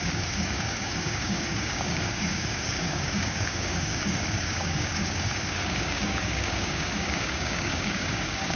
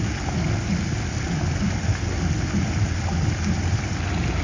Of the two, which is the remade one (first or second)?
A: first